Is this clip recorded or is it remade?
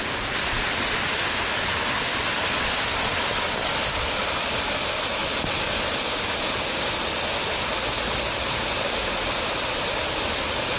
recorded